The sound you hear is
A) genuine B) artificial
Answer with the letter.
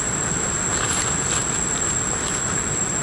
A